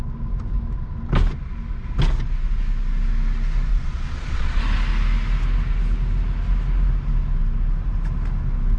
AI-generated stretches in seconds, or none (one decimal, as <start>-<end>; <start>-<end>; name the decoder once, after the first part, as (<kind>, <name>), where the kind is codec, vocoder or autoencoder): 3.7-4.6 (vocoder, Vocos)